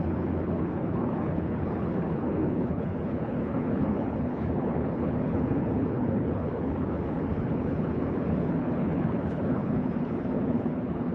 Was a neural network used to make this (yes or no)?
yes